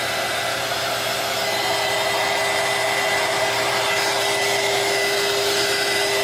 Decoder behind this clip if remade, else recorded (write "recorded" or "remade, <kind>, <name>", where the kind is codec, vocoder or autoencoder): recorded